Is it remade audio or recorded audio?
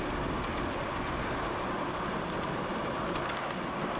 recorded